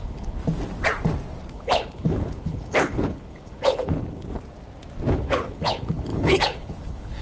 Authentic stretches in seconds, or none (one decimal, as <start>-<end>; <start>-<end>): 0.4-1.5; 4.3-5.1